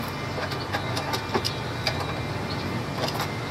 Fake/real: real